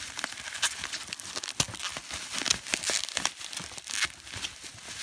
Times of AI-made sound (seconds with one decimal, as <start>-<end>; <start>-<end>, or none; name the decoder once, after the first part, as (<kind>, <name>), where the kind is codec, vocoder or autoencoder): none

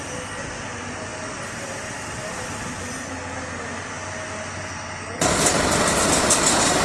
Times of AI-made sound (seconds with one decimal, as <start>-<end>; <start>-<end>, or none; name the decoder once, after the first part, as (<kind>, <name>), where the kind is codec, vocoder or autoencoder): none

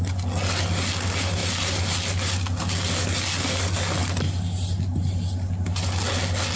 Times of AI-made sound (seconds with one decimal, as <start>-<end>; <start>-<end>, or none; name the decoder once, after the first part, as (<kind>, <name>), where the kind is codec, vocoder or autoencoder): none

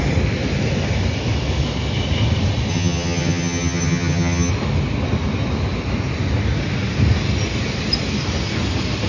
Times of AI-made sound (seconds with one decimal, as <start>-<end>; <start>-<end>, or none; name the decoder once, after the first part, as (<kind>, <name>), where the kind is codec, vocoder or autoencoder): 2.7-4.5 (vocoder, HiFi-GAN)

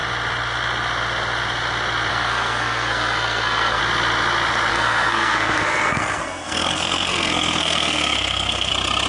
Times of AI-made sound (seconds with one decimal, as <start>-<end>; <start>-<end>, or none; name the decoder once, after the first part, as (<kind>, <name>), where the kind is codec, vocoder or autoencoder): 2.1-3.8 (codec, SNAC); 4.7-8.7

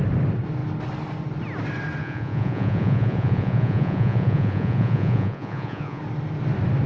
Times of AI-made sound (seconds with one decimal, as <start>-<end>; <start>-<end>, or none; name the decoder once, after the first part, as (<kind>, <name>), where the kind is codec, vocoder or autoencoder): 2.0-6.0 (vocoder, Vocos)

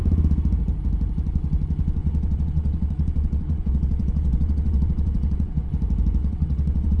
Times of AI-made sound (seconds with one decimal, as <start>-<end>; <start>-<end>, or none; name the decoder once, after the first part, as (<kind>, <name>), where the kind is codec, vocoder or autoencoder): 2.0-5.7 (vocoder, WaveNeXt); 6.2-7.0